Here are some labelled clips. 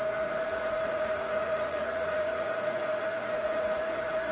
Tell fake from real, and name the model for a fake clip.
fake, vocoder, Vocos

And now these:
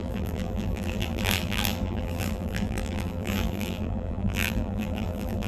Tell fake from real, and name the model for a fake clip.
fake, vocoder, BigVGAN v2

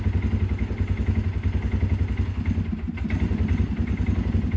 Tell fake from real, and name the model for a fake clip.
real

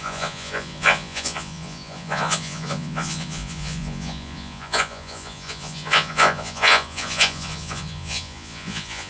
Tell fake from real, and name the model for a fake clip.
fake, vocoder, Vocos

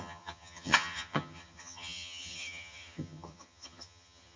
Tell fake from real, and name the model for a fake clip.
fake, vocoder, HiFi-GAN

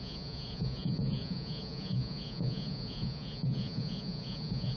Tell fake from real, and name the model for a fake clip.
fake, vocoder, Vocos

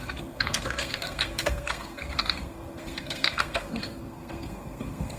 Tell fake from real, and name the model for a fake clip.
fake, codec, SNAC